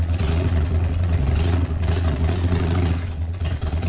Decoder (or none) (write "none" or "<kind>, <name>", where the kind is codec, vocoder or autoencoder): vocoder, Vocos